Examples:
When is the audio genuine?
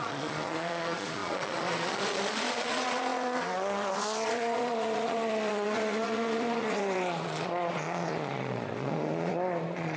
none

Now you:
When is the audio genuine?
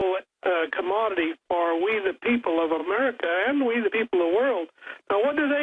0.8-2.8; 3.9-5.6